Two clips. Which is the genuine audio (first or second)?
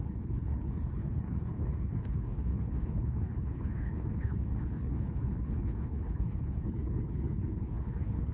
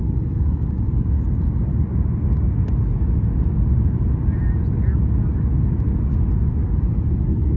second